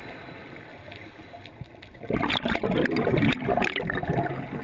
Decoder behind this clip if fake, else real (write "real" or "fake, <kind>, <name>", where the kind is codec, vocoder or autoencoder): real